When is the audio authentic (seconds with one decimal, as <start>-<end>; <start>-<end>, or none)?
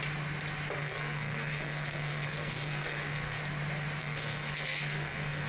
0.0-0.8; 3.4-4.0